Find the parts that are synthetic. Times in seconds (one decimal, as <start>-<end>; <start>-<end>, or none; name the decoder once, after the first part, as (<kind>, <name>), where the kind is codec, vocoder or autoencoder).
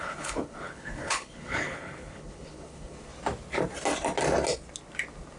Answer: 0.0-3.1 (codec, HILCodec)